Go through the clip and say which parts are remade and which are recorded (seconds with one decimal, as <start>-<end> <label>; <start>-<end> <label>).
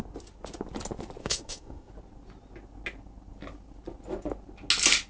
0.0-1.2 recorded; 1.2-1.9 remade; 1.9-5.1 recorded